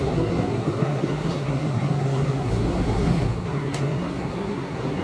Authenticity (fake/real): fake